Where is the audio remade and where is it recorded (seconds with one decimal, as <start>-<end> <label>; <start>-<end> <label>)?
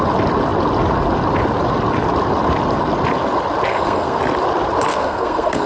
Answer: 0.0-3.7 recorded; 3.7-4.2 remade; 4.2-4.9 recorded; 4.9-5.7 remade